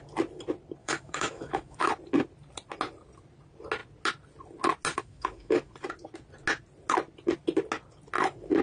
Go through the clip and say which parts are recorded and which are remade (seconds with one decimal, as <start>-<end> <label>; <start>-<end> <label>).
0.0-0.8 recorded; 0.8-1.9 remade; 1.9-4.9 recorded; 4.9-5.7 remade; 5.7-8.6 recorded